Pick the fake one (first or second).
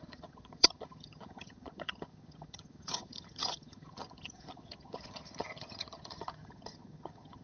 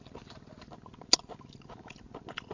first